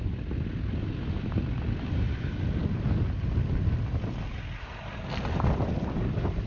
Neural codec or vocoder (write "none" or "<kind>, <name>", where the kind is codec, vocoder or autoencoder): none